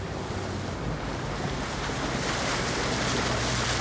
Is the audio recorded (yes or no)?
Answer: yes